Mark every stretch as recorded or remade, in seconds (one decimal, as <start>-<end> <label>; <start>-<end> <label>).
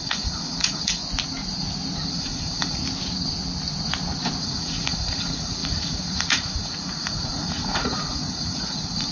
0.0-1.0 remade; 1.0-2.1 recorded; 2.1-2.8 remade; 2.8-4.4 recorded; 4.4-9.1 remade